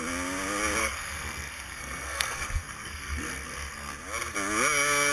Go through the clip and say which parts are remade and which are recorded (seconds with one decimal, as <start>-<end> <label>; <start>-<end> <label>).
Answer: 0.0-0.8 recorded; 0.8-3.9 remade; 3.9-5.1 recorded